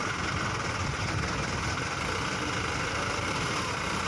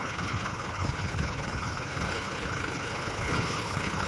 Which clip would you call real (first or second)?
first